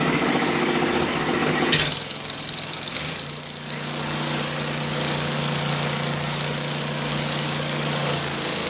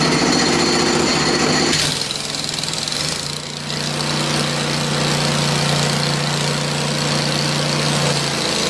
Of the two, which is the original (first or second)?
second